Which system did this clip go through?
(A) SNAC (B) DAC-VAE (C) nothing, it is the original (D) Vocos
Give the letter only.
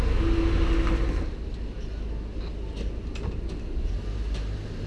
C